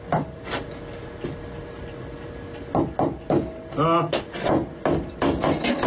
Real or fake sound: real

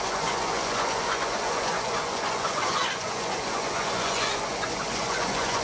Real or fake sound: fake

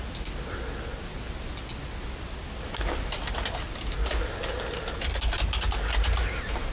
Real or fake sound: real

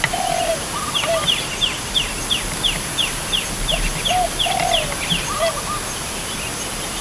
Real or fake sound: real